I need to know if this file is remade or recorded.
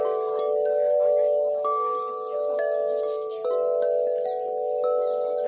recorded